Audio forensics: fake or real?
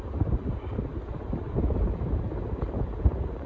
real